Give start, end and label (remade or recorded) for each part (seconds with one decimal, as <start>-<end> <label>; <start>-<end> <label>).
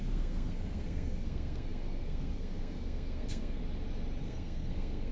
0.0-3.6 remade; 3.6-4.2 recorded; 4.2-5.1 remade